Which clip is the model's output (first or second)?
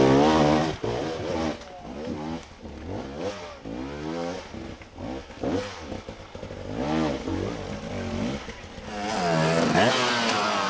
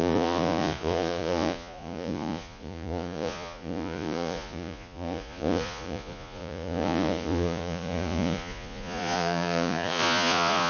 second